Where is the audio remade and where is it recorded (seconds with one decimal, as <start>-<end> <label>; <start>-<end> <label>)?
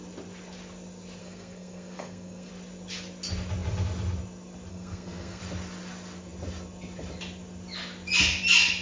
0.0-1.2 recorded; 1.2-2.5 remade; 2.5-4.7 recorded; 4.7-5.4 remade; 5.4-8.8 recorded